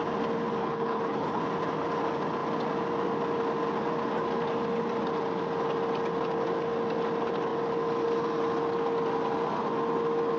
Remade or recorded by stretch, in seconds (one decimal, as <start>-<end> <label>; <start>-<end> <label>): 0.0-0.6 recorded; 0.6-1.4 remade; 1.4-10.4 recorded